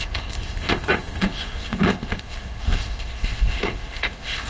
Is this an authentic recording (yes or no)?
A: no